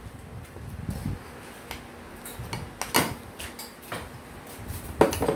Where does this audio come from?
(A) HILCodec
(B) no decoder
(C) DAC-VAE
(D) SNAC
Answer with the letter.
B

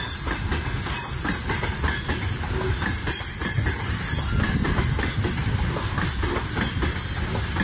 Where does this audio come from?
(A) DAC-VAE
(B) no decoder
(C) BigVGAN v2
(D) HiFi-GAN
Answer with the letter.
B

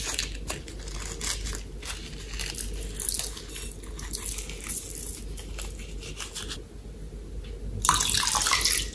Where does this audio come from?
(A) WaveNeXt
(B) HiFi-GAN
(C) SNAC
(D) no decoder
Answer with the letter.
D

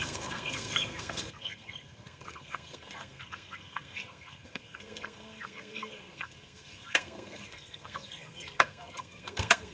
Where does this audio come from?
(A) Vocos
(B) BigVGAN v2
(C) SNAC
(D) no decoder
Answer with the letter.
C